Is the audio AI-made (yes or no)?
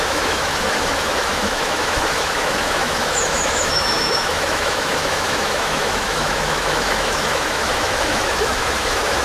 yes